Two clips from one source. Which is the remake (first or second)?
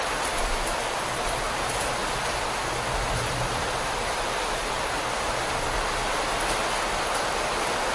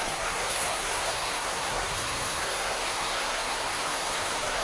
second